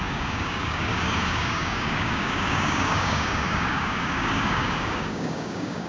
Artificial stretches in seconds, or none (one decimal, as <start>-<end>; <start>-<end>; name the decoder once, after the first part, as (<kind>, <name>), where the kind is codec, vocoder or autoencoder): 0.0-5.9 (codec, DAC)